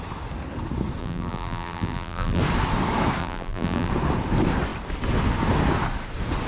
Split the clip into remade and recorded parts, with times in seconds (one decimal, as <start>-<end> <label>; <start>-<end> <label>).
0.0-1.0 recorded; 1.0-2.4 remade; 2.4-3.2 recorded; 3.2-3.9 remade; 3.9-6.5 recorded